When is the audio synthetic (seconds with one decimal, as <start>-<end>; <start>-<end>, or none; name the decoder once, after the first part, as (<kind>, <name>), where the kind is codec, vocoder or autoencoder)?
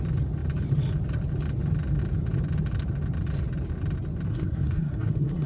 4.3-5.5 (codec, SNAC)